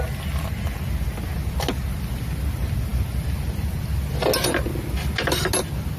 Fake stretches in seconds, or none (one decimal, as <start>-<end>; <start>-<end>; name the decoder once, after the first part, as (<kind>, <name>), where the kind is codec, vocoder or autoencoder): none